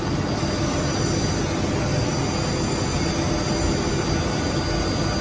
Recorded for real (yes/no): yes